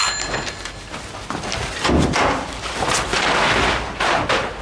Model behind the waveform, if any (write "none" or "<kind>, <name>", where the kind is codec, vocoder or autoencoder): none